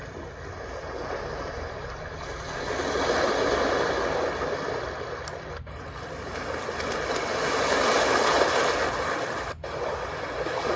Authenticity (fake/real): real